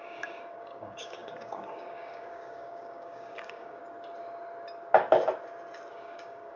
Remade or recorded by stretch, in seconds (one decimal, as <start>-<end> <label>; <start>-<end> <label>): 0.0-3.8 remade; 3.8-5.9 recorded; 5.9-6.6 remade